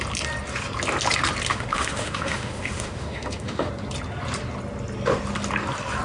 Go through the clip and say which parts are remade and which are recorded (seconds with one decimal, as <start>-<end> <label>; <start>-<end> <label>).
0.0-1.5 recorded; 1.5-3.7 remade; 3.7-6.0 recorded